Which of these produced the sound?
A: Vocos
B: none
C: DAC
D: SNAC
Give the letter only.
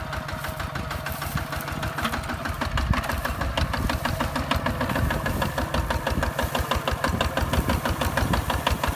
B